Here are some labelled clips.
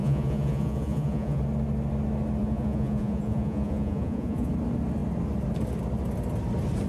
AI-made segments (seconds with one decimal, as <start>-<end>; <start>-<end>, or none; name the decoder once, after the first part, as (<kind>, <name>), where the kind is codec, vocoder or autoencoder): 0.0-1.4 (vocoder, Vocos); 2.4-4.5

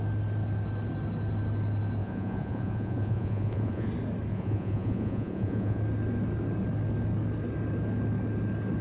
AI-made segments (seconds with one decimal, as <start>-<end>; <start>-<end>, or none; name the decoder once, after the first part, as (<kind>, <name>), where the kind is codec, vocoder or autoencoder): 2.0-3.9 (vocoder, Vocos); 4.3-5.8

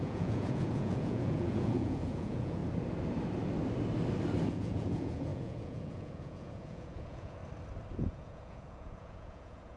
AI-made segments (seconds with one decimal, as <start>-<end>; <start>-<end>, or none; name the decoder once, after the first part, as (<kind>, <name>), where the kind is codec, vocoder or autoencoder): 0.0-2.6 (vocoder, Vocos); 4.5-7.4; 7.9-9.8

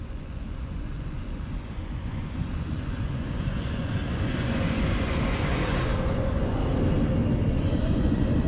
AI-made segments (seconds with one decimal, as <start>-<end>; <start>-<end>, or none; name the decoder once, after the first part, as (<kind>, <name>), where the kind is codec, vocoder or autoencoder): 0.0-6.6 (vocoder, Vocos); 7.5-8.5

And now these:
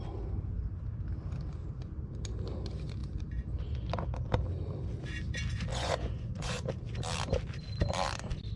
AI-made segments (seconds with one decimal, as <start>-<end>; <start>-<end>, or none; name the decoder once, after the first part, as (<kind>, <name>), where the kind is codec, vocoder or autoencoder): 5.7-6.7 (vocoder, Vocos)

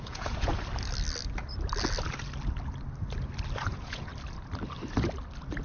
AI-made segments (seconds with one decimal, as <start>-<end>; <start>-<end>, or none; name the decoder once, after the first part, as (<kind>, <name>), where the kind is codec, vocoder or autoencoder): 0.0-0.5 (vocoder, Vocos); 3.6-4.1

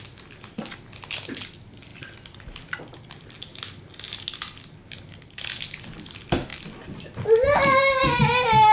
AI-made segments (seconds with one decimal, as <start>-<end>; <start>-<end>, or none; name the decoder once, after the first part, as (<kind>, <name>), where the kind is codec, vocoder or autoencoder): none

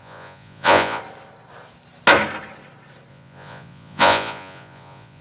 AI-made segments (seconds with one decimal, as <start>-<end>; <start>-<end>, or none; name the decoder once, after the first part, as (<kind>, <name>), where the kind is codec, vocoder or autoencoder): 0.0-1.0 (vocoder, Vocos); 3.1-5.2